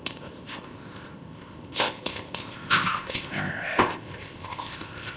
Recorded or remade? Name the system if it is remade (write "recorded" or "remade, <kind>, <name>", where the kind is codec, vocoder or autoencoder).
remade, codec, ZipCodec